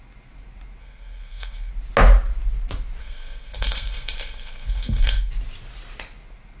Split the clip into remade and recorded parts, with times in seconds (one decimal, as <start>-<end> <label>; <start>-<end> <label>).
0.0-0.8 recorded; 0.8-1.7 remade; 1.7-3.0 recorded; 3.0-5.3 remade; 5.3-6.6 recorded